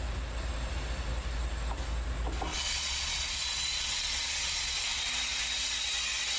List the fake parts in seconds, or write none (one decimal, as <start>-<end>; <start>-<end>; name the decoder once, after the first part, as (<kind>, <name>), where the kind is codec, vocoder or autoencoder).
2.5-5.1 (vocoder, Vocos)